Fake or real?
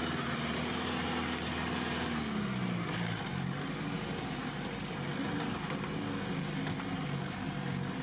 real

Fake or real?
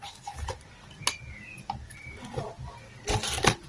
real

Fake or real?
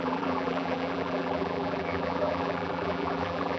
fake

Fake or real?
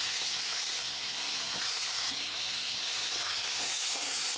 fake